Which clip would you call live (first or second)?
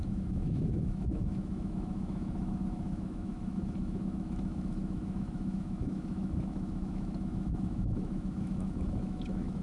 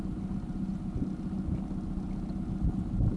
second